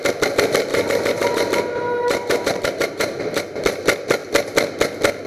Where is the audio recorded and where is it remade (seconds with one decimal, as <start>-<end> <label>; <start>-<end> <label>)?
0.0-0.7 recorded; 0.7-3.4 remade; 3.4-5.3 recorded